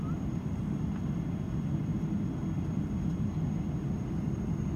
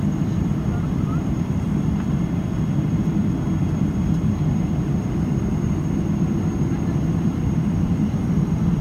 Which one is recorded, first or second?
first